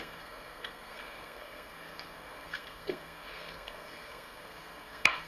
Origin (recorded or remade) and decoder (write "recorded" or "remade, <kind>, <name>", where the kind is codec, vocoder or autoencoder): remade, codec, SNAC